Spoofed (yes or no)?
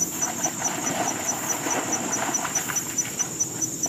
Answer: yes